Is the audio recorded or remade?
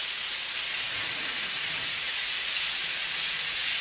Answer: remade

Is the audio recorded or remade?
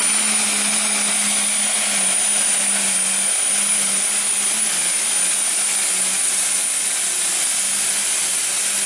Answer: recorded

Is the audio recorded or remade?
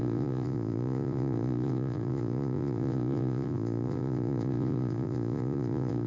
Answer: remade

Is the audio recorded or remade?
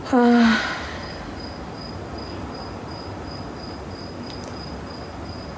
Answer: recorded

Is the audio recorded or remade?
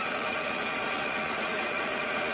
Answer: remade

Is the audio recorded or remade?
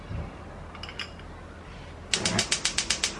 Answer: recorded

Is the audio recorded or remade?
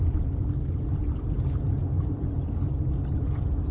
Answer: recorded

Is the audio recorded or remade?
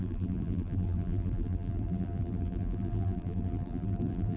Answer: remade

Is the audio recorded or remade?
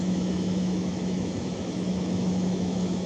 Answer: remade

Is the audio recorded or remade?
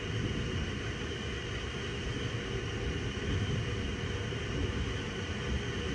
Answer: recorded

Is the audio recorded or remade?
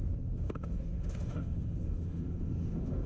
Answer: remade